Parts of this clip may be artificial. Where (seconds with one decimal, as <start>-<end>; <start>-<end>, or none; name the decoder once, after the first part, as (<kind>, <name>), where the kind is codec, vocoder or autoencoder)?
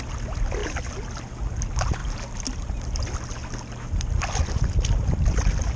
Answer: none